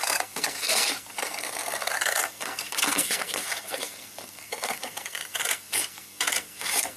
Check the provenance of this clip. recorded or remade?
remade